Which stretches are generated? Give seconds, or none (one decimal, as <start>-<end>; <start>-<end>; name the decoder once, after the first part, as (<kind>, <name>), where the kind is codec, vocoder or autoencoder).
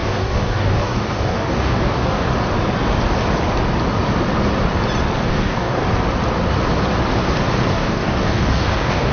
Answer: 0.0-2.3 (codec, DAC); 5.3-5.8; 7.7-9.1